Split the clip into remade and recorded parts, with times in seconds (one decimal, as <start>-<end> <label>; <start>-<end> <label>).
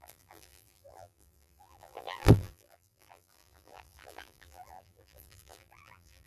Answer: 0.0-6.3 remade